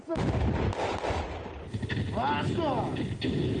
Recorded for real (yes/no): yes